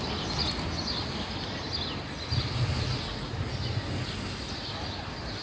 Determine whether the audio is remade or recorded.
recorded